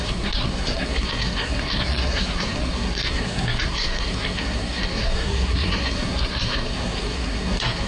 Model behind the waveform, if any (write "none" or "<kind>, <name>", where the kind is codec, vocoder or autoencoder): codec, SNAC